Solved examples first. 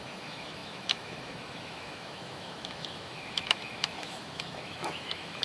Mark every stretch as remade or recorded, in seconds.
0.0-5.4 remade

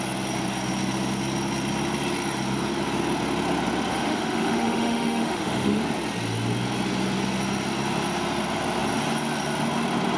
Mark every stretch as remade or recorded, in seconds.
0.0-3.9 recorded; 3.9-5.8 remade; 5.8-10.2 recorded

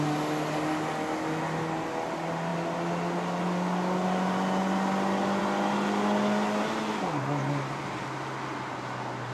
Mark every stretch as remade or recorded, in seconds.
0.0-9.3 recorded

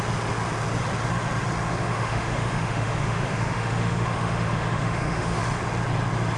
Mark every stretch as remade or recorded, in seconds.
0.0-1.7 recorded; 1.7-5.4 remade; 5.4-6.4 recorded